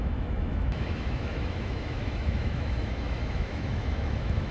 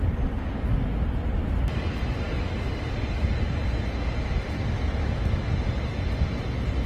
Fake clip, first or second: first